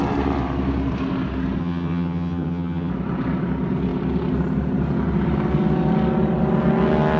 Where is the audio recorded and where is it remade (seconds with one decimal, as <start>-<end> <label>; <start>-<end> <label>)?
0.0-1.6 recorded; 1.6-2.9 remade; 2.9-7.2 recorded